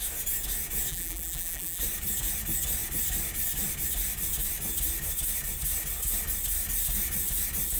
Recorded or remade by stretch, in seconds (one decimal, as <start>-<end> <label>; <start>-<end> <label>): 0.0-0.9 recorded; 0.9-1.8 remade; 1.8-7.8 recorded